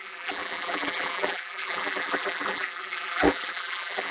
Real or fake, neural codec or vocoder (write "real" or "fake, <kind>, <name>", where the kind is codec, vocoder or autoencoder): fake, vocoder, BigVGAN v2